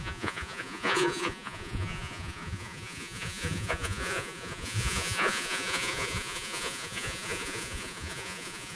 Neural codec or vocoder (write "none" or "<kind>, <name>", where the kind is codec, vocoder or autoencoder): vocoder, Vocos